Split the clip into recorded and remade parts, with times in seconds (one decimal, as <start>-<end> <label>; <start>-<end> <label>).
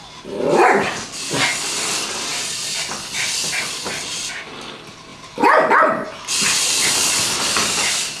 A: 0.0-8.2 recorded